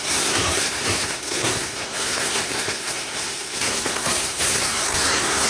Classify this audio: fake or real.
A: fake